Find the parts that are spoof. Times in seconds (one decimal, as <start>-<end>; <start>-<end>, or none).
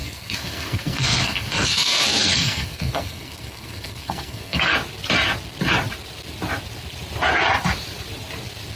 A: 0.0-4.7